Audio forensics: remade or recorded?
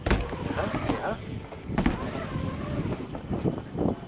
recorded